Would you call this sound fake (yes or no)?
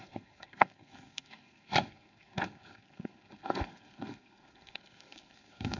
yes